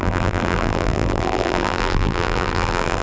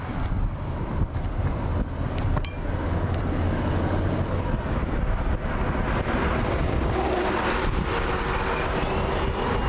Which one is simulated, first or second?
first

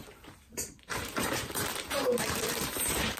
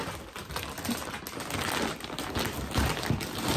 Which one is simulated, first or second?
first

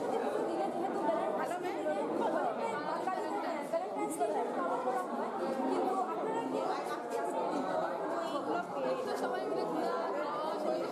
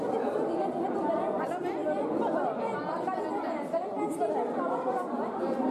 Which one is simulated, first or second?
second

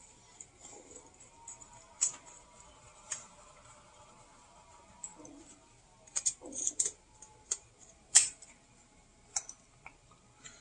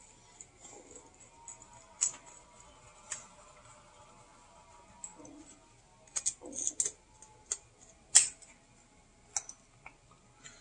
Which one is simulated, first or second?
first